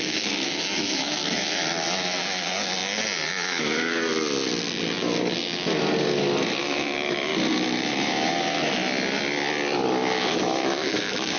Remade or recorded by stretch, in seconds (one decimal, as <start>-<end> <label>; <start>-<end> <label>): 0.0-1.6 remade; 1.6-3.3 recorded; 3.3-4.1 remade; 4.1-6.6 recorded; 6.6-7.3 remade; 7.3-10.4 recorded; 10.4-11.4 remade